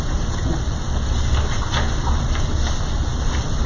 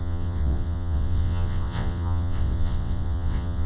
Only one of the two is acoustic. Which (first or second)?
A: first